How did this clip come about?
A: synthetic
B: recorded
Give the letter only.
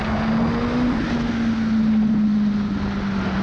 B